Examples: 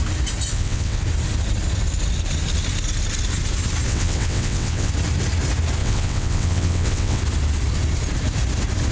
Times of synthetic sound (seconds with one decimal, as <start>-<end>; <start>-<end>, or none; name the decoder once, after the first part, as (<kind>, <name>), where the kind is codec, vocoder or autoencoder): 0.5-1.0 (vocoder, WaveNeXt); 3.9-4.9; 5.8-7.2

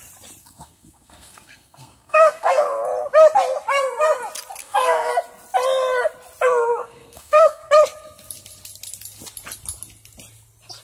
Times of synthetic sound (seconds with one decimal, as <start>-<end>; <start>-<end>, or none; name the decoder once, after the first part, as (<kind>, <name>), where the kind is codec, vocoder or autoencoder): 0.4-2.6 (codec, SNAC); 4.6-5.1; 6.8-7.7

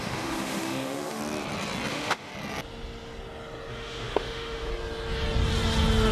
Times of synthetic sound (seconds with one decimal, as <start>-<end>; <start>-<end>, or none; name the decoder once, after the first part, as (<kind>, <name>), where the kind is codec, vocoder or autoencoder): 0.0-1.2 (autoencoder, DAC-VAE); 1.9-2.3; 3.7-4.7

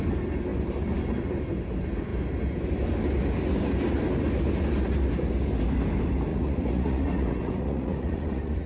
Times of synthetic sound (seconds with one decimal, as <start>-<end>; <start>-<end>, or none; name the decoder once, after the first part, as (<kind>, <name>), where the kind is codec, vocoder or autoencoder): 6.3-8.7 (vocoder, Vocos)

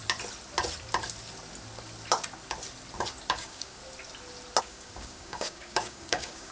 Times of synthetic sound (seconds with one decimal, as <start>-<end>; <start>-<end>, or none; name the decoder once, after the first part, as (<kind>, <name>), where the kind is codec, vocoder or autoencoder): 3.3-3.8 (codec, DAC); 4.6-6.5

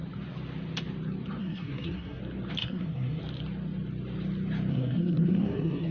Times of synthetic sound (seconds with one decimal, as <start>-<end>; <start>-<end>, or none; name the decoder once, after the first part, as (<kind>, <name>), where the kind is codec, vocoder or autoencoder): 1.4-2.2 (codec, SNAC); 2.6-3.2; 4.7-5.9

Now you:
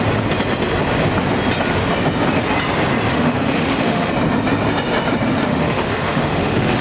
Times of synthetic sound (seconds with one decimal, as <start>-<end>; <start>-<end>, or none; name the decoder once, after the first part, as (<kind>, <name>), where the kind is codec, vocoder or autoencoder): 3.1-4.1 (autoencoder, DAC-VAE); 5.5-6.8